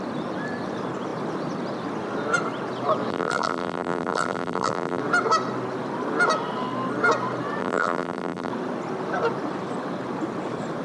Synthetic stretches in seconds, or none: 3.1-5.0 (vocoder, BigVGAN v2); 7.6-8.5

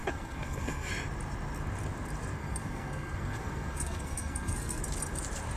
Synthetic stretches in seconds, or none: 0.0-0.9 (codec, SNAC); 2.4-4.8